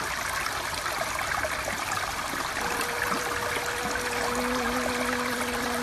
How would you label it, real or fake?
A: real